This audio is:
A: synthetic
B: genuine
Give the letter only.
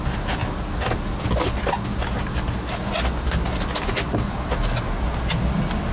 B